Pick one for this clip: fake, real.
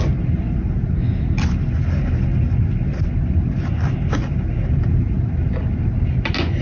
real